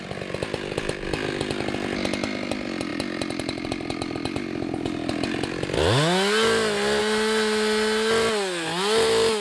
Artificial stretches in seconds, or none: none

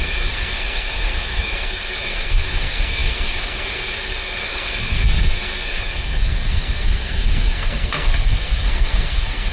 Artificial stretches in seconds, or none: 0.0-9.5 (codec, SNAC)

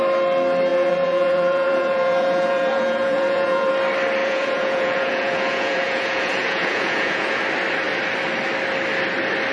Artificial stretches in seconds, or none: 0.7-3.7 (vocoder, Vocos); 4.2-7.4

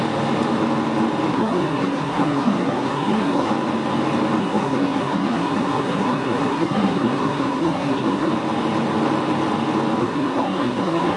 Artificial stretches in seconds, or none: 1.3-3.5 (codec, SNAC); 4.4-8.3; 10.0-11.2

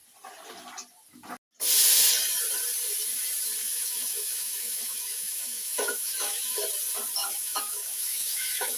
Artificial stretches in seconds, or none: 3.6-6.6 (autoencoder, DAC-VAE); 7.2-8.8

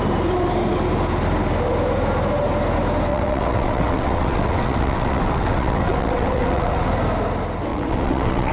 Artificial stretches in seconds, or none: 3.1-6.9 (vocoder, WaveNeXt); 7.7-8.5

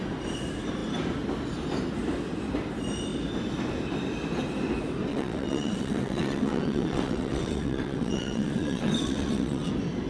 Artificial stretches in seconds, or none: 5.1-9.7 (vocoder, WaveNeXt)

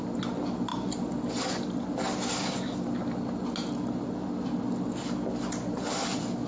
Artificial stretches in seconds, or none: none